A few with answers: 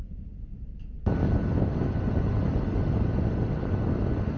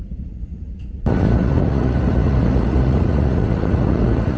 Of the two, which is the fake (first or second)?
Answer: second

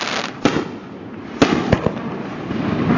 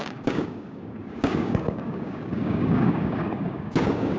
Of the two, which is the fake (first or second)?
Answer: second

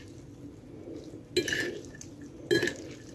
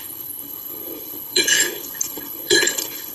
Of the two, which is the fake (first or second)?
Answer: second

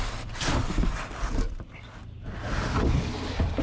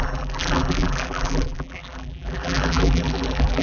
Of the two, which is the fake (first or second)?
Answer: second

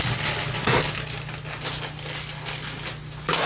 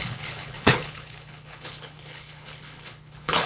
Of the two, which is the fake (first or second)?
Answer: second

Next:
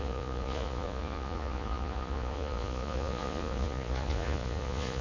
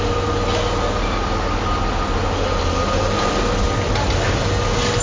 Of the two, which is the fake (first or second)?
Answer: first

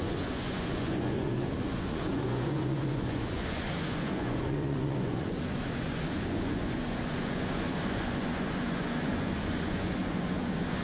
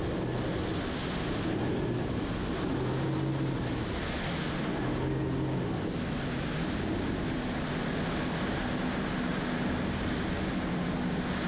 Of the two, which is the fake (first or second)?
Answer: first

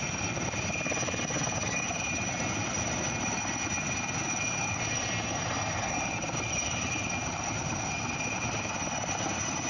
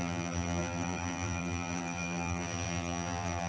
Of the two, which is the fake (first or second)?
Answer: second